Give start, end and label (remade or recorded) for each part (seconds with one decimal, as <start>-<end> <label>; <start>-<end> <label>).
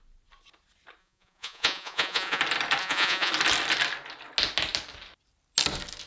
0.0-1.0 recorded; 1.0-2.4 remade; 2.4-2.8 recorded; 2.8-3.3 remade; 3.3-6.1 recorded